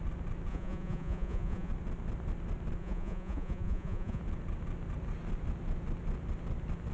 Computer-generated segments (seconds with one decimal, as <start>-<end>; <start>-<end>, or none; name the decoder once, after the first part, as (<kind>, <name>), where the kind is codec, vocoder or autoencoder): 0.5-1.7 (vocoder, Vocos); 2.8-4.2